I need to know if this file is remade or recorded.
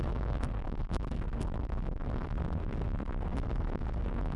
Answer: remade